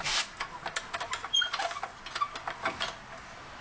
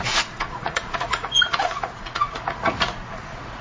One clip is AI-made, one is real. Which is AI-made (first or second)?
second